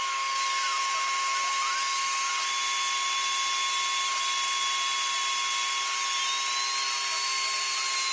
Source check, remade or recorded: recorded